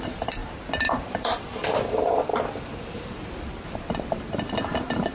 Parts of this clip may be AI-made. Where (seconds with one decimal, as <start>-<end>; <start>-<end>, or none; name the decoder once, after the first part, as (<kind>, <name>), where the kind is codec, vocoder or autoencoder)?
0.0-0.4 (vocoder, BigVGAN v2); 1.1-2.3; 4.1-5.1